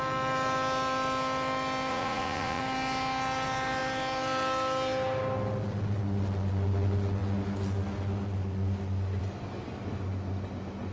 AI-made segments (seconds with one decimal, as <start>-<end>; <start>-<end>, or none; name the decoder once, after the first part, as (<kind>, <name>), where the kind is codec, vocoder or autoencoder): 1.9-2.6 (vocoder, Vocos)